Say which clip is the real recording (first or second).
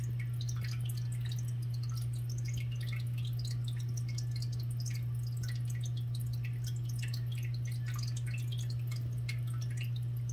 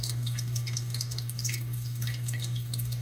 first